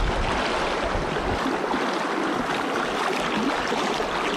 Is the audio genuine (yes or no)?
yes